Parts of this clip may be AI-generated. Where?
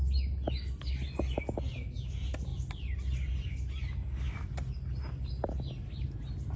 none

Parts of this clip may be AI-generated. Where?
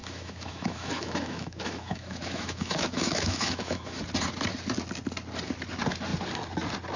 0.0-4.0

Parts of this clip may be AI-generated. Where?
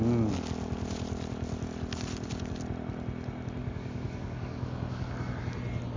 3.6-5.3